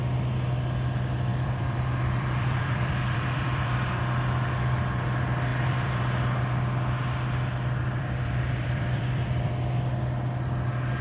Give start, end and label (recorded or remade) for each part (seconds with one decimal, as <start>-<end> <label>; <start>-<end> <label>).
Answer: 0.0-1.3 recorded; 1.3-4.0 remade; 4.0-5.5 recorded; 5.5-6.0 remade; 6.0-7.8 recorded; 7.8-9.5 remade; 9.5-11.0 recorded